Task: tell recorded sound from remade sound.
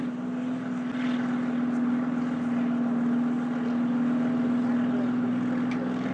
recorded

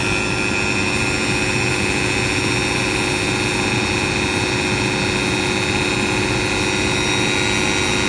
recorded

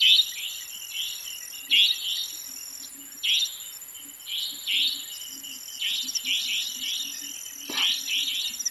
recorded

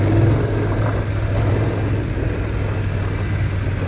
recorded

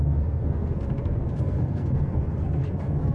remade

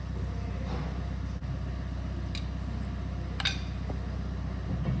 recorded